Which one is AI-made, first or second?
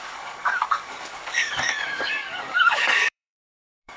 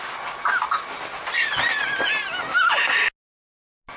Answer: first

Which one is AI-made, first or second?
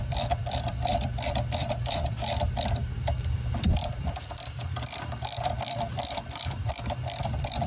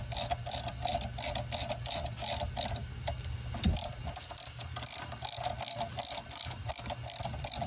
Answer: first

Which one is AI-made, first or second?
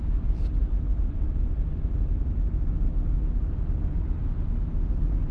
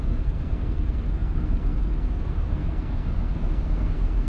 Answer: second